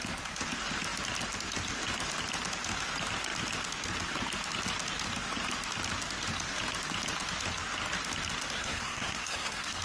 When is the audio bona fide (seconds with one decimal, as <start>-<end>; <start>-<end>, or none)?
0.0-8.6